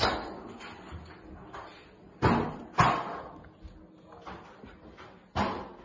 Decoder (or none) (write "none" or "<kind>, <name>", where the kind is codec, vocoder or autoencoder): none